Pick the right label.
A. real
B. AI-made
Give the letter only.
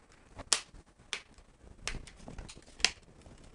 A